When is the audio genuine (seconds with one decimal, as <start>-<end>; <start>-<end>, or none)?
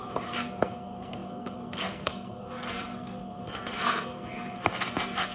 none